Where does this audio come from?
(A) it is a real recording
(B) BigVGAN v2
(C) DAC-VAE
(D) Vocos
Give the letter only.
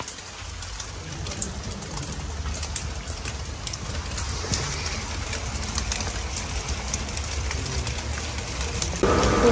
A